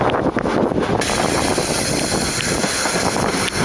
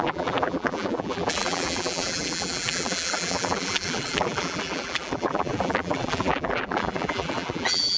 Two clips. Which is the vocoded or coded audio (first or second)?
second